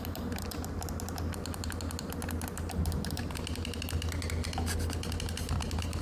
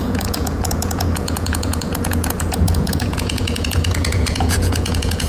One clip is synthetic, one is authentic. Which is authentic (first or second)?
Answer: first